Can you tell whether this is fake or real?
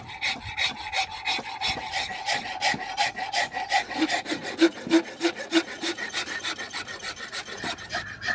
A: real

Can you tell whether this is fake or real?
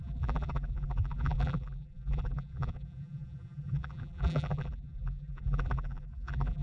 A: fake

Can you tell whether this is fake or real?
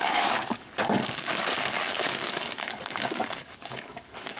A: fake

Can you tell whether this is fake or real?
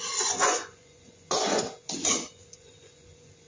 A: fake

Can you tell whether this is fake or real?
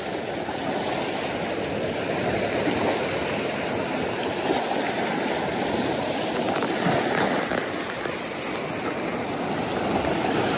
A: real